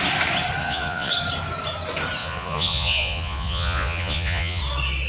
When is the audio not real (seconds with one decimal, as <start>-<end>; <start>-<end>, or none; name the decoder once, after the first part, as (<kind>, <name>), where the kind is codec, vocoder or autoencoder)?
0.6-1.1 (vocoder, Vocos); 2.2-4.6